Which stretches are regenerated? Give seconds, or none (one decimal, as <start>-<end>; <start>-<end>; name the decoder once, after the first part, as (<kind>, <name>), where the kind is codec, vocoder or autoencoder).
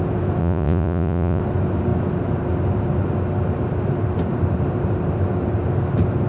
0.4-1.4 (vocoder, Vocos)